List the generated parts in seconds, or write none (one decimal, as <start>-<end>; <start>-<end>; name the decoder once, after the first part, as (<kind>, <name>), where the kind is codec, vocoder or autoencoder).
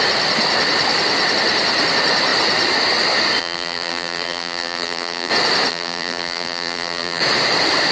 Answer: 3.4-5.3 (vocoder, BigVGAN v2); 5.7-7.2